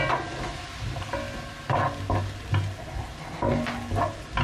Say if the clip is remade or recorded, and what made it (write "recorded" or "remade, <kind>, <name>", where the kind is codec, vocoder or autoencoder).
recorded